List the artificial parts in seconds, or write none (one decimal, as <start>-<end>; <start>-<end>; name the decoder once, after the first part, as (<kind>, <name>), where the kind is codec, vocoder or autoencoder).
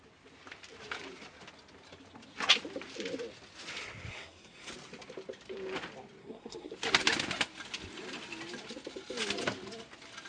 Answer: 4.1-4.7 (codec, SNAC); 6.2-6.7